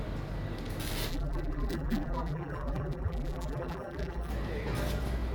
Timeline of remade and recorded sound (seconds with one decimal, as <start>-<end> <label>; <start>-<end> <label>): 0.0-1.1 recorded; 1.1-4.3 remade; 4.3-5.3 recorded